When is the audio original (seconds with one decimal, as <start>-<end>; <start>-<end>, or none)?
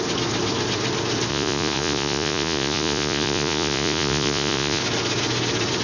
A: 0.0-1.3; 4.8-5.8